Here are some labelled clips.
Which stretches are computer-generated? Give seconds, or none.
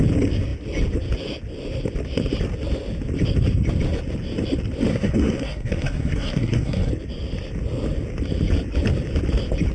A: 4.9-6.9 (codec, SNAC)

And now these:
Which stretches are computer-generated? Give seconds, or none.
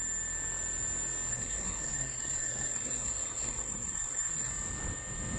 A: 1.3-4.5 (codec, SNAC)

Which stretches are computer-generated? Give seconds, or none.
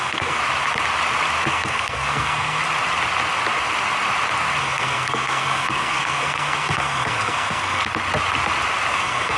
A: 0.0-0.4 (codec, SNAC); 1.5-2.6; 4.6-7.8; 8.9-9.4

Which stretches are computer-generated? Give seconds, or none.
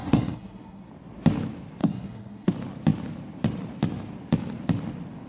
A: 0.0-0.9 (codec, SNAC); 1.8-2.5